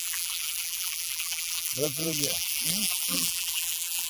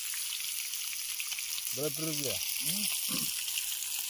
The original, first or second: second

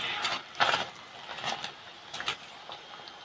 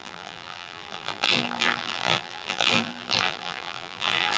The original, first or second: first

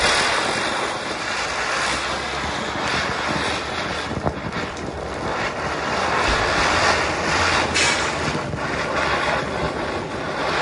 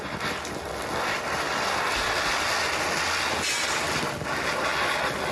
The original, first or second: second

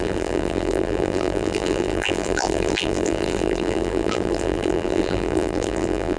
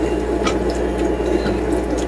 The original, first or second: second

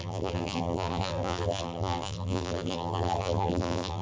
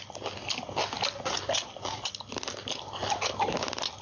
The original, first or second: second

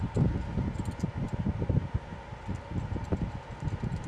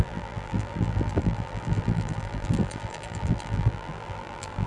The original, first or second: first